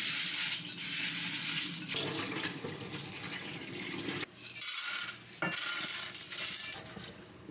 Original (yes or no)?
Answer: yes